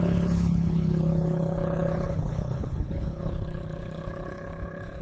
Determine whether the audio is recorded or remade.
remade